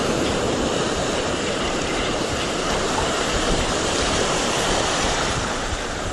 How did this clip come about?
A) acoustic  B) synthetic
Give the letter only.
B